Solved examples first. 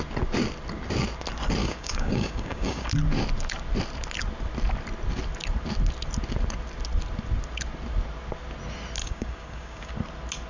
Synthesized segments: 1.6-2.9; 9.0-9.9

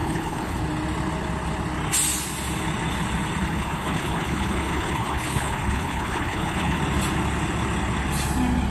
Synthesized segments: 0.0-0.6; 3.4-6.8

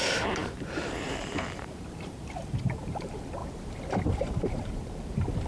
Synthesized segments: 0.0-3.4; 4.2-5.5

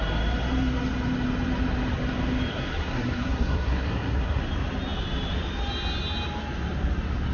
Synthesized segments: 2.5-4.4

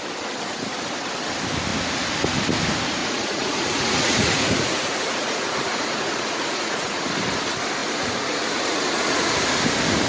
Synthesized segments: 3.0-7.0; 7.8-9.3

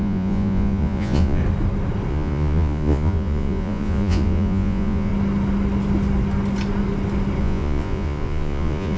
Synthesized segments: 0.0-1.4; 2.1-5.1; 7.4-9.0

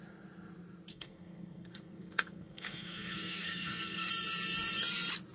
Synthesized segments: 0.9-4.1